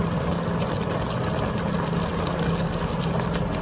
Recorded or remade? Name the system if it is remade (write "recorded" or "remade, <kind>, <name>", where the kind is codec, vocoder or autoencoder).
recorded